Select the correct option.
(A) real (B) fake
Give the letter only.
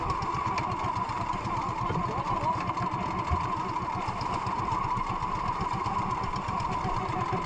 A